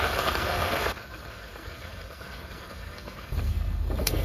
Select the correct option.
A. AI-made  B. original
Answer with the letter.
A